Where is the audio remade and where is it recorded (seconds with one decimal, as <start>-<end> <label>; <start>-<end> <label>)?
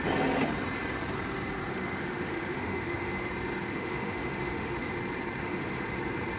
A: 0.0-1.7 recorded; 1.7-3.3 remade; 3.3-3.7 recorded; 3.7-4.9 remade; 4.9-5.4 recorded; 5.4-6.0 remade; 6.0-6.4 recorded